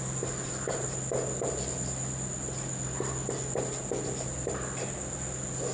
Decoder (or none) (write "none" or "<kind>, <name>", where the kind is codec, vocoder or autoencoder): none